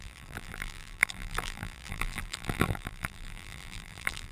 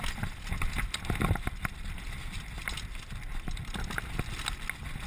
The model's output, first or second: first